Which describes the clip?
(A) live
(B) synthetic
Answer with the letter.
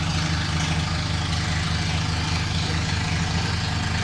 A